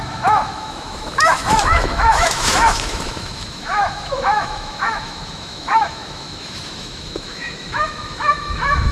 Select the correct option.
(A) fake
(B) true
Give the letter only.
A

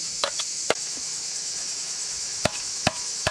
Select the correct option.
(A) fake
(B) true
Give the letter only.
A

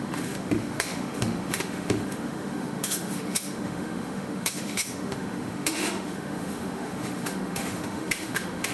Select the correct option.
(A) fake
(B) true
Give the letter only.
A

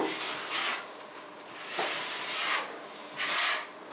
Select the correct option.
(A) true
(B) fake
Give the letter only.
A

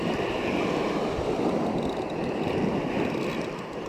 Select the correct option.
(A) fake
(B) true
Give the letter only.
B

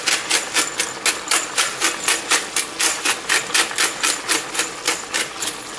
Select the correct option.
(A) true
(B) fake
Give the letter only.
A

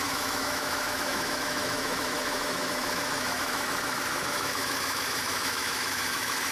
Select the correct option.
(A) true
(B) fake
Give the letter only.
B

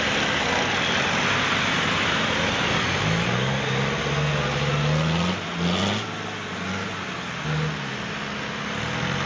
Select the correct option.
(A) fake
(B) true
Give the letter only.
B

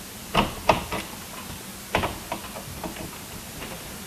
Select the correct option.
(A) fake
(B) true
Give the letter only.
B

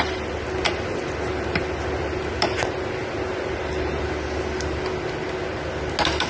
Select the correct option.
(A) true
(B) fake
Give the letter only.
A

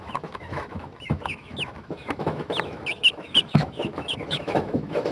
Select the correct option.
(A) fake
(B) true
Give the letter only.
A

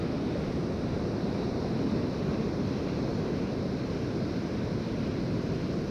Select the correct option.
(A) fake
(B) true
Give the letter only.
B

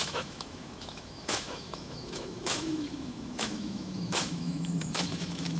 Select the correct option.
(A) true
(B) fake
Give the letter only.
B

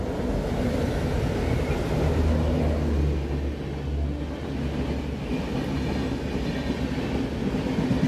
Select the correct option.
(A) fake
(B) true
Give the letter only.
B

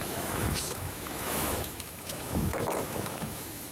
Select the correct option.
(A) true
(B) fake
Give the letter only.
B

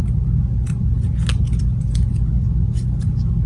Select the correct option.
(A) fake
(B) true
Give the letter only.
B